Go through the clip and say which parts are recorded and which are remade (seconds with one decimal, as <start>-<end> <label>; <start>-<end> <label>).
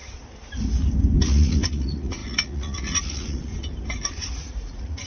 0.0-1.2 recorded; 1.2-3.5 remade; 3.5-4.3 recorded; 4.3-5.1 remade